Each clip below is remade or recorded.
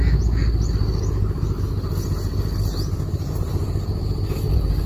recorded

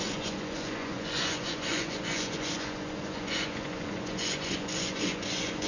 remade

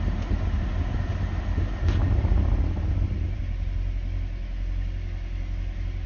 recorded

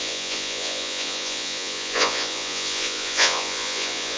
remade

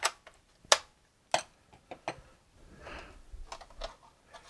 recorded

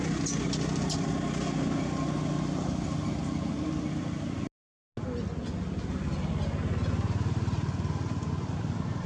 recorded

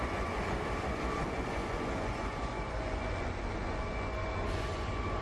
remade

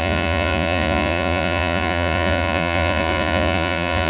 remade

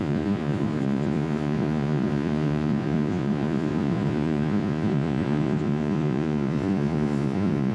remade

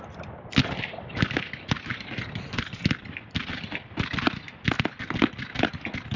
recorded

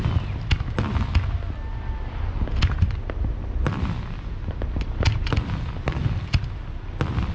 recorded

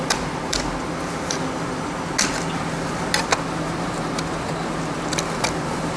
recorded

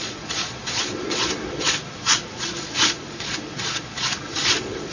remade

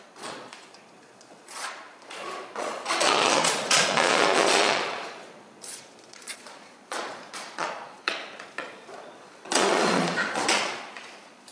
remade